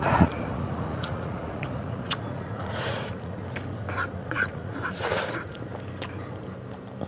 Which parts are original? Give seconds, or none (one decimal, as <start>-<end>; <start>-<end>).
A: 3.4-4.1; 5.7-7.1